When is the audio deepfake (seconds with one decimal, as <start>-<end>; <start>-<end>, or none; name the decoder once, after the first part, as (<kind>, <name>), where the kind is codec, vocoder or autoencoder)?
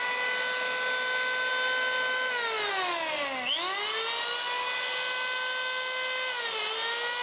none